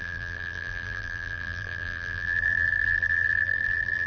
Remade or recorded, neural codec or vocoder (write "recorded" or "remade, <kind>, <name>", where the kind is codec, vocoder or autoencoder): remade, vocoder, BigVGAN v2